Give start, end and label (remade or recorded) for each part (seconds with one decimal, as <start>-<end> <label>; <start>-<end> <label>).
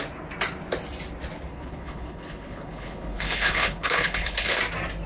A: 0.0-1.5 recorded; 1.5-4.6 remade; 4.6-5.1 recorded